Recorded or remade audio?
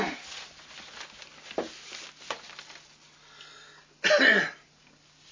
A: recorded